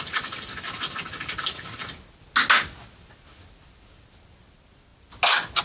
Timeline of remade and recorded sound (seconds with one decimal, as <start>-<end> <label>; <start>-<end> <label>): 0.0-5.6 recorded